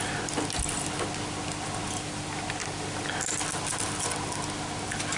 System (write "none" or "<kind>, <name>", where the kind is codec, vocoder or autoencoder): none